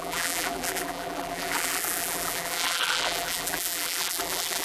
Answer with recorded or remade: remade